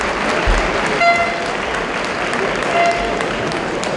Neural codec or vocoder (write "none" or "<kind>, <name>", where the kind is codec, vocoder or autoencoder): none